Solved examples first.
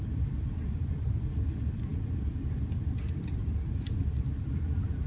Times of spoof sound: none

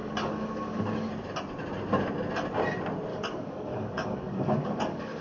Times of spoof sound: 0.0-1.1 (codec, DAC); 3.1-5.2

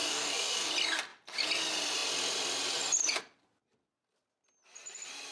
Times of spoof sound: 0.0-0.7 (codec, DAC)

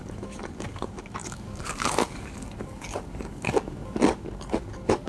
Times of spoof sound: 0.0-5.1 (codec, DAC)